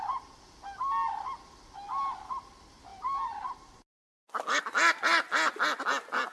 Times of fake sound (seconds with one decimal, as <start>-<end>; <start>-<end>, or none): 2.9-3.5